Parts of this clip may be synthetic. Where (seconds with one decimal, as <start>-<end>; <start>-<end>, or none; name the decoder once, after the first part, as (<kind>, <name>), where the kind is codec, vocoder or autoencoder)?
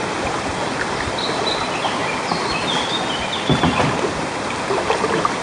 none